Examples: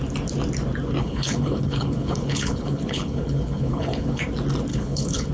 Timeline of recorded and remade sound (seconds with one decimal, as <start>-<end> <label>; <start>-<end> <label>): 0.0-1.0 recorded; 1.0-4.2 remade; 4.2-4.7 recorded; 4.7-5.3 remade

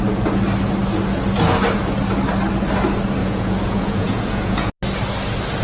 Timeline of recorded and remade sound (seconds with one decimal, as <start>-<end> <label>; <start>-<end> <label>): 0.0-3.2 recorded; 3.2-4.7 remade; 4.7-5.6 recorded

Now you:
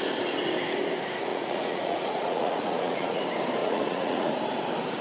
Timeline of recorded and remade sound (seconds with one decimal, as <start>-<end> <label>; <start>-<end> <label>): 0.0-1.3 recorded; 1.3-3.2 remade; 3.2-3.6 recorded; 3.6-4.3 remade; 4.3-5.0 recorded